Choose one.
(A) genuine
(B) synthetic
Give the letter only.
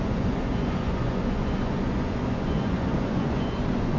B